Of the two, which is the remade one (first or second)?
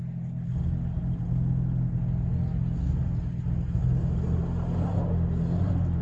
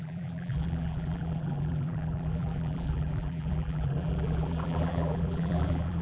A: second